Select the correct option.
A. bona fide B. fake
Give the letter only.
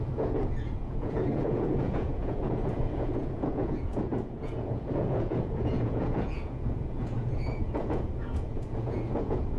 B